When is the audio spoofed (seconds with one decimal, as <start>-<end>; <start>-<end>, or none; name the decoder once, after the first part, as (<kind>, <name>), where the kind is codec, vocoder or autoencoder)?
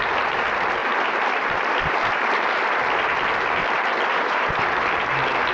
0.8-2.8 (vocoder, BigVGAN v2); 3.6-4.6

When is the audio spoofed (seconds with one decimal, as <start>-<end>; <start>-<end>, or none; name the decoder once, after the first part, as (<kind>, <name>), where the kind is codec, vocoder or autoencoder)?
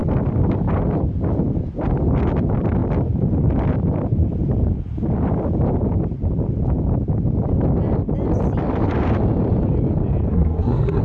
10.3-11.0 (codec, SNAC)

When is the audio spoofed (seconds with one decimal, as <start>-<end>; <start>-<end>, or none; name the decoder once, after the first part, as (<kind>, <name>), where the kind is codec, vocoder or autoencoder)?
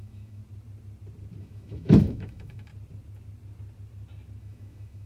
0.0-0.4 (autoencoder, DAC-VAE); 1.4-2.7; 4.4-5.1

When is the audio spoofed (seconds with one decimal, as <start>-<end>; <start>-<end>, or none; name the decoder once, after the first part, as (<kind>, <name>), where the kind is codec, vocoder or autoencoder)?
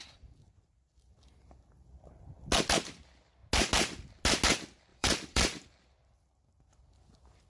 4.9-5.8 (vocoder, BigVGAN v2)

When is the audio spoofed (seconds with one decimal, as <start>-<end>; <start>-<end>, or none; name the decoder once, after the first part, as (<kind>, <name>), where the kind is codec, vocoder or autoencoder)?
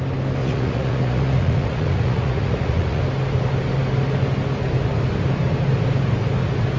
0.4-3.0 (vocoder, Vocos)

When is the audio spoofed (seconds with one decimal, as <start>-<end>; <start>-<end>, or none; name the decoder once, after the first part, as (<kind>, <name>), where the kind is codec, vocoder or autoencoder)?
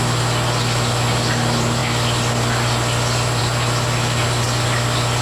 none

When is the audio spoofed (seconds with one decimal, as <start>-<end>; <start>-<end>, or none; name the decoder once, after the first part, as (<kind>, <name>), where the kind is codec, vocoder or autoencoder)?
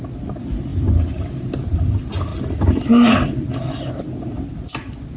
none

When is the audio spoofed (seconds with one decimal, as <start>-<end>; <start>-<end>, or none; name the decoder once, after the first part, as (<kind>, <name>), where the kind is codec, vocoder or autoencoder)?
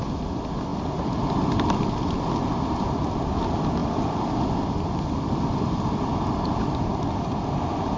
0.7-1.3 (vocoder, BigVGAN v2); 3.8-6.6